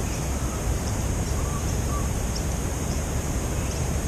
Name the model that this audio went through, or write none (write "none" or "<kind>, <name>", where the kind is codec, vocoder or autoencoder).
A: vocoder, BigVGAN v2